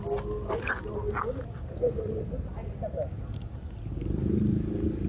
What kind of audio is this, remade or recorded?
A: recorded